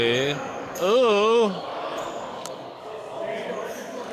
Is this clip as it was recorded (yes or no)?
no